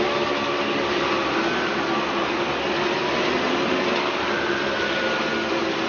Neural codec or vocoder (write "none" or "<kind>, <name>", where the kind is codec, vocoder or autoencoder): none